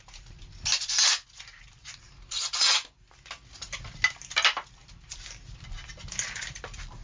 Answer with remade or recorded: recorded